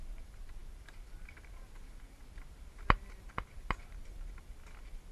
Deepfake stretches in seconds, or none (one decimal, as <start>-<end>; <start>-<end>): none